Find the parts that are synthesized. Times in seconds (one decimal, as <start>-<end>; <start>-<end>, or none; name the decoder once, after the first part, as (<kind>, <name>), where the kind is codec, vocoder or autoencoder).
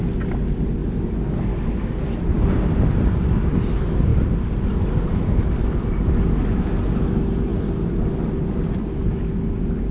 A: 4.1-5.1 (vocoder, BigVGAN v2)